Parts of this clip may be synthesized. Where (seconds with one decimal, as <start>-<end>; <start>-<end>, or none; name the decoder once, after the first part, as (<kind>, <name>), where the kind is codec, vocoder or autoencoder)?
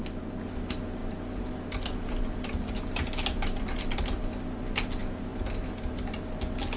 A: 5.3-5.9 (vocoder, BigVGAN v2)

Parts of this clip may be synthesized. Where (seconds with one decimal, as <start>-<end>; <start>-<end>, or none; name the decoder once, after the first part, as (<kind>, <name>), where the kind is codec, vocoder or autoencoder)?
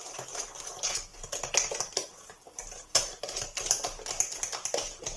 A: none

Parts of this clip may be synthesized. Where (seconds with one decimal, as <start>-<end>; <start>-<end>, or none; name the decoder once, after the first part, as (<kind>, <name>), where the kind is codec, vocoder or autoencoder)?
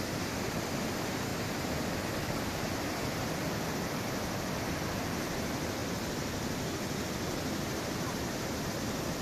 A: 1.3-4.8 (vocoder, BigVGAN v2); 5.8-9.2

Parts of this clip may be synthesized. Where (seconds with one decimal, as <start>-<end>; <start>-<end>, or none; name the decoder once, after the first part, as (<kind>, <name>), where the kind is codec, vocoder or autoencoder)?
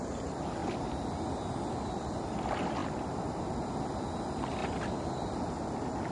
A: 0.0-0.6 (vocoder, BigVGAN v2); 1.7-6.1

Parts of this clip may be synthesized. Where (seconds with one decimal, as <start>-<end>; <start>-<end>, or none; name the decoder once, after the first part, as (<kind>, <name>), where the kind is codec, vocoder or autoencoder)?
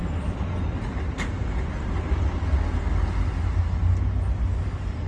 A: none